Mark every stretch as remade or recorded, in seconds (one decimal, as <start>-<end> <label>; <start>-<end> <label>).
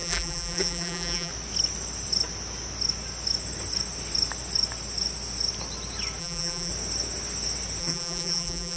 0.0-1.3 remade; 1.3-6.2 recorded; 6.2-6.7 remade; 6.7-7.8 recorded; 7.8-8.8 remade